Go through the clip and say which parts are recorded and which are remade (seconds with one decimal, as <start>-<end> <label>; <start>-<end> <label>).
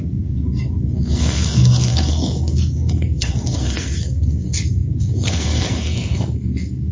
0.0-6.9 remade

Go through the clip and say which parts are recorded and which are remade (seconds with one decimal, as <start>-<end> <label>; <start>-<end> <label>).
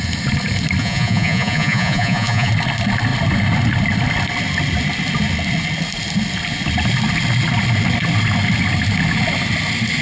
0.0-0.8 recorded; 0.8-2.5 remade; 2.5-10.0 recorded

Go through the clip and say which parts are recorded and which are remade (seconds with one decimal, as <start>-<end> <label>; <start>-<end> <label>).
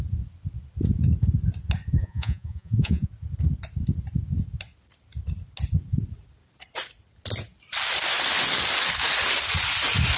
0.0-2.0 recorded; 2.0-3.1 remade; 3.1-10.2 recorded